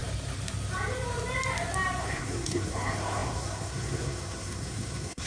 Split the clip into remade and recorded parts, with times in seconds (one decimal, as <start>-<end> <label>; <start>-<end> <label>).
0.0-2.0 recorded; 2.0-5.3 remade